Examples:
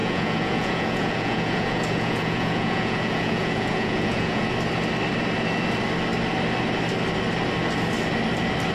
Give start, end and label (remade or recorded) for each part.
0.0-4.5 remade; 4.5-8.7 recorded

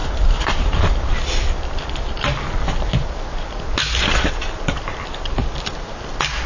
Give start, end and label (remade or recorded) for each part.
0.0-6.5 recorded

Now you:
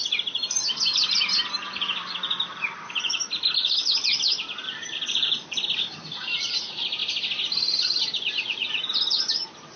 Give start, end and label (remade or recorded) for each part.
0.0-4.6 recorded; 4.6-6.6 remade; 6.6-9.8 recorded